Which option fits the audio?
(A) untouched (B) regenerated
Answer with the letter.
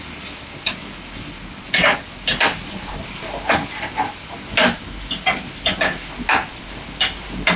A